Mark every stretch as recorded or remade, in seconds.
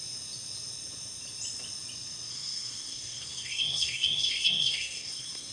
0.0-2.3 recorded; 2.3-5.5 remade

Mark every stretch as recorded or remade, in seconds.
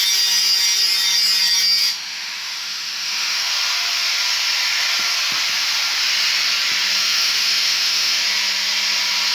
0.0-1.8 recorded; 1.8-3.5 remade; 3.5-7.0 recorded; 7.0-8.2 remade; 8.2-9.3 recorded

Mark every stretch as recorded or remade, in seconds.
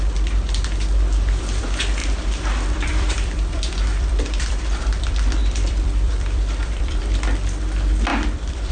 0.0-2.0 recorded; 2.0-7.0 remade; 7.0-8.1 recorded; 8.1-8.7 remade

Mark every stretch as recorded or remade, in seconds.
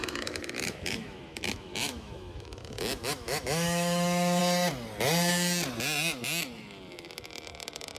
0.0-4.4 remade; 4.4-8.0 recorded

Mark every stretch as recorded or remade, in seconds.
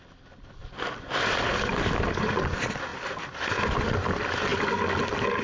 0.0-5.4 recorded